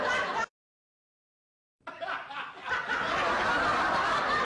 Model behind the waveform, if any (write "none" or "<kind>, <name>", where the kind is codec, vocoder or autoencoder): none